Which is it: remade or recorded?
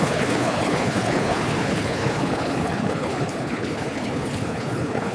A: remade